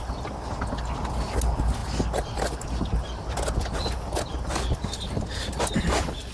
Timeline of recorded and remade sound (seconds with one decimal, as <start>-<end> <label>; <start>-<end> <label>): 0.0-6.3 recorded